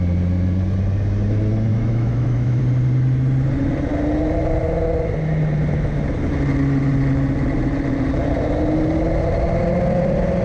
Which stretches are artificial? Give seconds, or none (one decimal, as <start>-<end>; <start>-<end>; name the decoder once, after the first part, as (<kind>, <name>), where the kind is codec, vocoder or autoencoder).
1.7-2.6 (autoencoder, DAC-VAE)

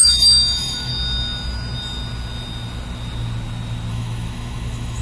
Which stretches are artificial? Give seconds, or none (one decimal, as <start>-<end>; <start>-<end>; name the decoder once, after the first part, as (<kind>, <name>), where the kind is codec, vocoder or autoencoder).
0.0-0.9 (autoencoder, DAC-VAE); 3.9-5.0

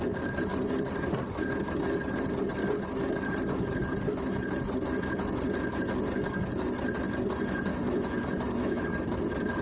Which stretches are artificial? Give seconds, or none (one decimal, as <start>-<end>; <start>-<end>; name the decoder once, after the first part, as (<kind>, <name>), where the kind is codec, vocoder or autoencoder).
7.7-8.8 (autoencoder, DAC-VAE)

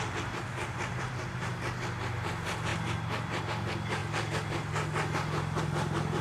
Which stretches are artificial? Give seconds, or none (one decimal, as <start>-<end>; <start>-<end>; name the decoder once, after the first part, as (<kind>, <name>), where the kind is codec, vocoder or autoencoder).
none

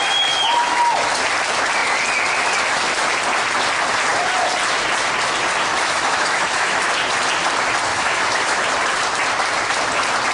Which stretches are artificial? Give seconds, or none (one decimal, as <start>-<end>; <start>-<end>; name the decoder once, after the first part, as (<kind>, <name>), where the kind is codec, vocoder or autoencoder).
5.7-6.8 (autoencoder, DAC-VAE); 7.9-8.7

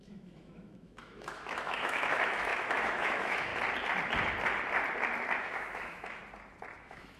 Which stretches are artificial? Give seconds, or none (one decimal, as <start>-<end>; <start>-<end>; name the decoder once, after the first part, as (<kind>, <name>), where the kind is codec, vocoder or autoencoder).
0.0-3.5 (autoencoder, DAC-VAE); 5.4-6.2; 6.8-7.2

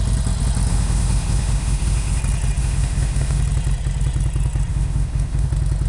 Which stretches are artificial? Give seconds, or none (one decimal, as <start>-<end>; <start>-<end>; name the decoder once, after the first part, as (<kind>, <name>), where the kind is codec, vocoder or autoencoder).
0.7-2.2 (autoencoder, DAC-VAE); 2.6-3.4; 4.7-5.5

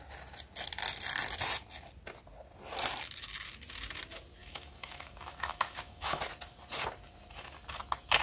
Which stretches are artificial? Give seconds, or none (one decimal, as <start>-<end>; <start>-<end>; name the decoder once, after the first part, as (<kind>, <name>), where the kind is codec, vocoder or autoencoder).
4.4-6.2 (autoencoder, DAC-VAE)